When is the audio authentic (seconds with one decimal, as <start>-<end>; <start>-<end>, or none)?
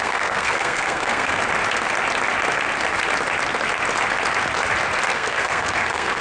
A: 1.4-5.1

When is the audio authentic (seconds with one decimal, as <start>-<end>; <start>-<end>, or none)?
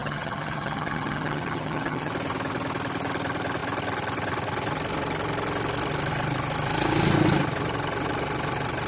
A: 2.1-8.9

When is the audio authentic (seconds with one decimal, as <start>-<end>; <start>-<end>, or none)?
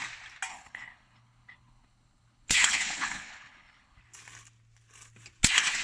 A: 0.0-0.5; 4.0-5.8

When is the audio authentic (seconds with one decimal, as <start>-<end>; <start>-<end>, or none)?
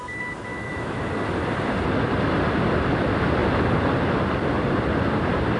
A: 0.0-0.5; 1.1-5.6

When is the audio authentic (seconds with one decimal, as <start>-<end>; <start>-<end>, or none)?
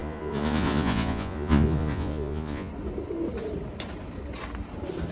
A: 2.7-5.1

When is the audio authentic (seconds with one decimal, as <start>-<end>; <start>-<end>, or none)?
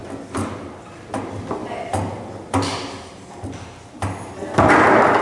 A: 0.0-5.2